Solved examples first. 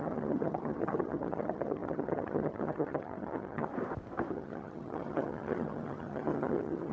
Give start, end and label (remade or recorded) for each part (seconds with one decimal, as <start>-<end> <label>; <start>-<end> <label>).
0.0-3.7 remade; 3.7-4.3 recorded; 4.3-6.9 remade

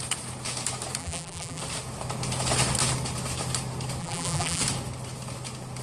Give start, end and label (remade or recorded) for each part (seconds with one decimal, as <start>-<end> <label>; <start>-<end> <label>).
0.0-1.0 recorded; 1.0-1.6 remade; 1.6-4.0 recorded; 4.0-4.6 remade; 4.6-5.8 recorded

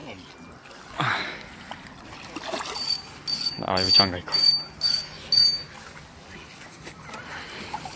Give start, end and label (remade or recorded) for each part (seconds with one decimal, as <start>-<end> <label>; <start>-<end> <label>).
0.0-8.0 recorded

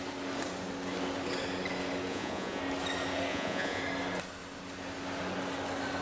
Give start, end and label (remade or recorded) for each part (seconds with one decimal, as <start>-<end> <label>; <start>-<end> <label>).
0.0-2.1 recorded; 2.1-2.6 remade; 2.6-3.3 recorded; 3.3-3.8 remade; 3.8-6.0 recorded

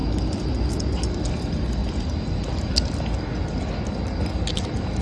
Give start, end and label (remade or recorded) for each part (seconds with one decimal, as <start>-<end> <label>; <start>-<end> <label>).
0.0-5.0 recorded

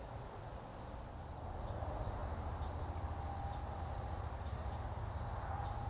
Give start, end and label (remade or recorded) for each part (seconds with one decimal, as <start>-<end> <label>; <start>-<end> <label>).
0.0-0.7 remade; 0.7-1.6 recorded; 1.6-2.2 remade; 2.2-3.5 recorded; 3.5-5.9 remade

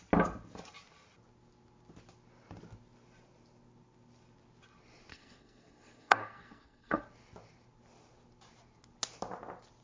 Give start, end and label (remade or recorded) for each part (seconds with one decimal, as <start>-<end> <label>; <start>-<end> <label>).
0.0-5.1 recorded; 5.1-7.0 remade; 7.0-9.8 recorded